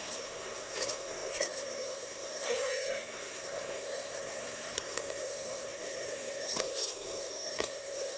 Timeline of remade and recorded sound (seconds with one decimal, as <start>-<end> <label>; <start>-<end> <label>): 0.0-8.2 remade